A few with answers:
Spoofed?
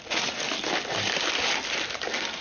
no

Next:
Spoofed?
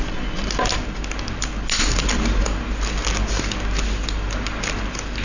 no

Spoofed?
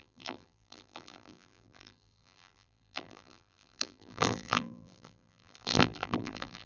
yes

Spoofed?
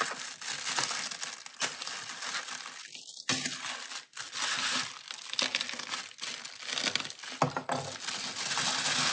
no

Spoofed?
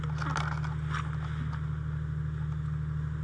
no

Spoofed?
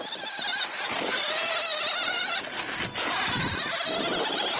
no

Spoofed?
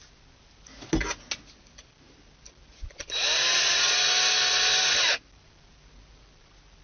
no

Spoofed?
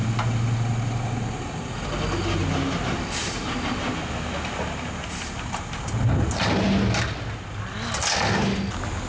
no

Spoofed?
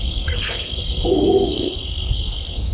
yes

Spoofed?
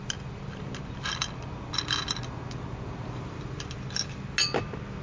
no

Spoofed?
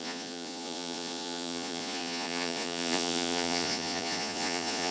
yes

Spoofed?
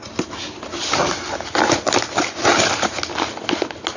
no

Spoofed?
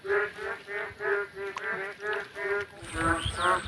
no